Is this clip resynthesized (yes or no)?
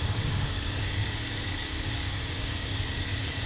yes